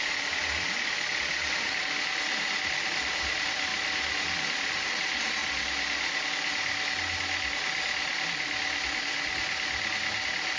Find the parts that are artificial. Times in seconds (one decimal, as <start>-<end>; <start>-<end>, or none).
none

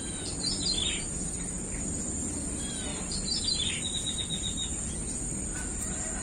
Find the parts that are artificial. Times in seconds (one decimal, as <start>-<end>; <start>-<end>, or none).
2.9-3.4

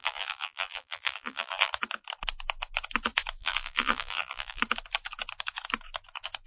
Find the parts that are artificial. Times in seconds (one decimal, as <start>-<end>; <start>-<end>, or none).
0.0-1.7; 3.4-4.6

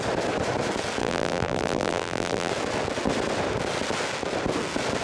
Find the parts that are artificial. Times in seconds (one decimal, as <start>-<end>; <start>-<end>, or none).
1.0-2.5

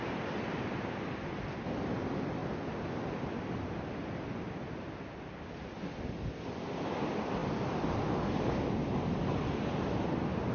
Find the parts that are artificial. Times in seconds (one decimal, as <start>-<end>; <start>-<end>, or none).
0.0-1.3

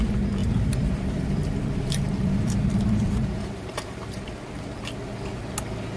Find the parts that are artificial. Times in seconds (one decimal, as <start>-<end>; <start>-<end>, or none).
0.4-4.0

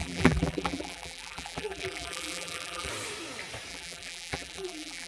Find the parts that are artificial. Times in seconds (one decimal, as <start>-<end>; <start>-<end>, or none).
0.0-2.9; 3.7-5.1